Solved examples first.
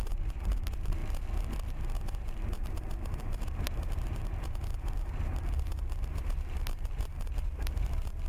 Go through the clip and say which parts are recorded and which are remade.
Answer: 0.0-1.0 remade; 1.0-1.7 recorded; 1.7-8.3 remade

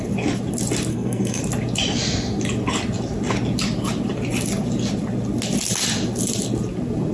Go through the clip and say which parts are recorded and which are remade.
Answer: 0.0-0.9 recorded; 0.9-1.4 remade; 1.4-7.1 recorded

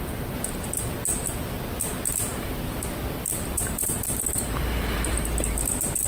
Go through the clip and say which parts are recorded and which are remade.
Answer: 0.0-2.3 recorded; 2.3-5.3 remade; 5.3-6.1 recorded

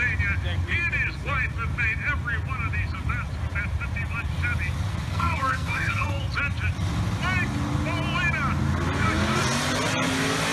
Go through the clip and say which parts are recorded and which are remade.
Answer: 0.0-4.9 recorded; 4.9-6.2 remade; 6.2-10.5 recorded

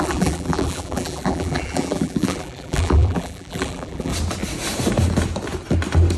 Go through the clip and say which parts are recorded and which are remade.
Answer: 0.0-4.1 remade; 4.1-6.2 recorded

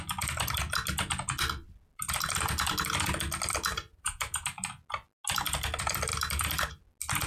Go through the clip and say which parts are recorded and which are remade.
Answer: 0.0-3.7 recorded; 3.7-4.7 remade; 4.7-6.1 recorded; 6.1-6.7 remade; 6.7-7.3 recorded